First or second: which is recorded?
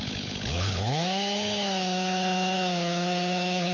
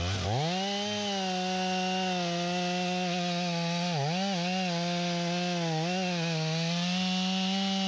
second